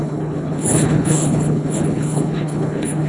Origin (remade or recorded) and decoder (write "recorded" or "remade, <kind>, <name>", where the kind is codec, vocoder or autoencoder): remade, codec, HILCodec